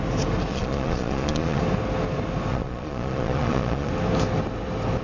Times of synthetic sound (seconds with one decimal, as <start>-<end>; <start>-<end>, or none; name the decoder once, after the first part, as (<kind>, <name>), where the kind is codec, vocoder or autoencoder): 0.5-1.6 (vocoder, Vocos); 2.5-3.9